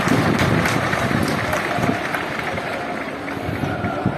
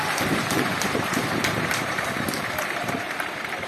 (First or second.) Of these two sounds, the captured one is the first